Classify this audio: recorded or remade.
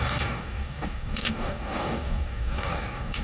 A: remade